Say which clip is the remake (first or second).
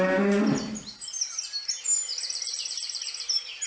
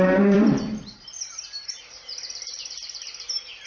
second